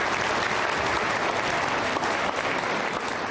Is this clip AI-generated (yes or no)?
no